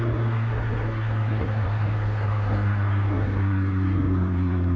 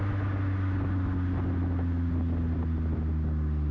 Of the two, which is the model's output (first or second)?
first